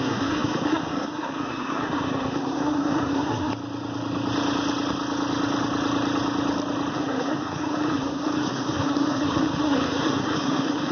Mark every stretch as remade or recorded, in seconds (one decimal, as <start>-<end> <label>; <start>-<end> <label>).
0.0-3.5 remade; 3.5-6.9 recorded; 6.9-10.9 remade